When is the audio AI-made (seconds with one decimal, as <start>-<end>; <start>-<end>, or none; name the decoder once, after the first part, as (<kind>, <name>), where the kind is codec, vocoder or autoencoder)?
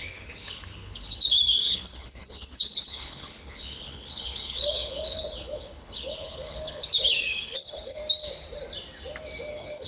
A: 0.0-8.0 (codec, HILCodec); 9.5-9.9